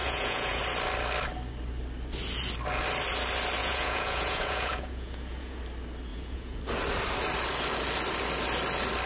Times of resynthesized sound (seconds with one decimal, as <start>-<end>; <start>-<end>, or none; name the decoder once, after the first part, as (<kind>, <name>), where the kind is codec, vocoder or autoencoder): 0.0-0.6 (vocoder, Vocos); 3.6-5.6; 6.1-6.6

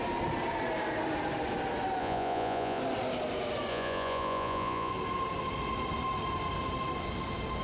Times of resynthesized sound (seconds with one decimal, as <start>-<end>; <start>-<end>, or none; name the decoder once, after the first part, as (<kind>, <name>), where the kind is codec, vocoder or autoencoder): 2.0-2.8 (vocoder, Vocos); 3.7-4.9